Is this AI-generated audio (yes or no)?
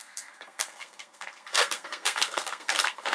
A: yes